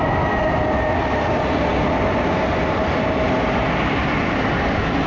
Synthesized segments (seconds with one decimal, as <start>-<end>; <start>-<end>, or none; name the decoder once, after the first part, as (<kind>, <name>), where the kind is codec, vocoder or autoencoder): none